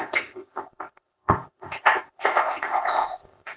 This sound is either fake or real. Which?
fake